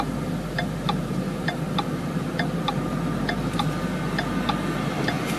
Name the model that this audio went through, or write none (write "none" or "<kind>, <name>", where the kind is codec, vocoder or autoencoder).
none